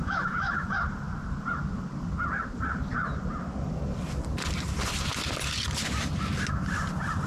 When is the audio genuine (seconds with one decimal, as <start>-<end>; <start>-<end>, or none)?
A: 0.7-7.3